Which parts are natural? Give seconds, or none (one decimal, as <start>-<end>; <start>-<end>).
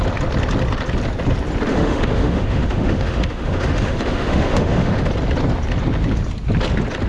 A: 0.0-1.7; 5.1-7.1